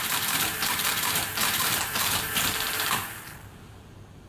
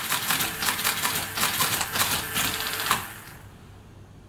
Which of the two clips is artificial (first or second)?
first